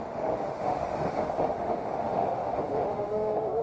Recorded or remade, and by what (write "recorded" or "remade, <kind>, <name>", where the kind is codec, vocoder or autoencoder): remade, autoencoder, DAC-VAE